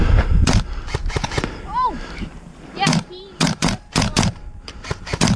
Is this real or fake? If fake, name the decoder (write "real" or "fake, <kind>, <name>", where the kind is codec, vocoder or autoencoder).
fake, vocoder, BigVGAN v2